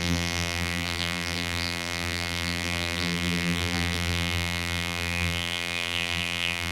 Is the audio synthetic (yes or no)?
yes